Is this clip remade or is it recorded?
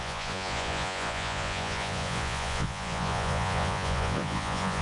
remade